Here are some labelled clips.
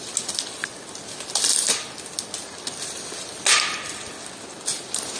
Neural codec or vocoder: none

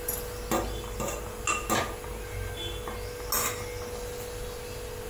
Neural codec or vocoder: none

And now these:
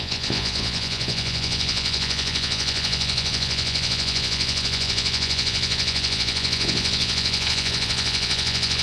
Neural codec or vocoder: vocoder, Vocos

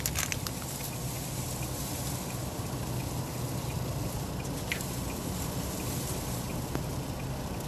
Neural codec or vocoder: none